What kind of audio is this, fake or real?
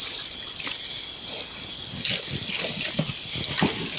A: real